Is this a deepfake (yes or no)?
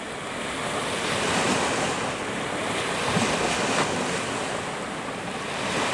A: no